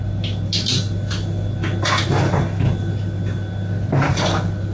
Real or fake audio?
real